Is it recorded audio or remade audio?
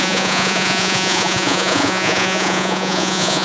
remade